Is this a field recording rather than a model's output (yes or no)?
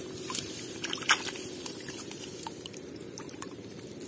no